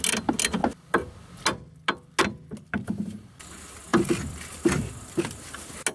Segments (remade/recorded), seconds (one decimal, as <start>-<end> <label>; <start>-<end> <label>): 0.0-5.9 recorded